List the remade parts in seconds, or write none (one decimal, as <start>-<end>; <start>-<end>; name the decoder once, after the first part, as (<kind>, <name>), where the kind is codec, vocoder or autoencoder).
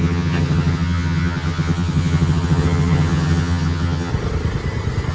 0.0-4.1 (vocoder, HiFi-GAN)